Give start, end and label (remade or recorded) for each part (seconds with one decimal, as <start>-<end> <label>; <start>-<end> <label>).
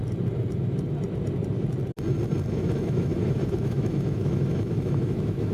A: 0.0-2.5 recorded; 2.5-5.5 remade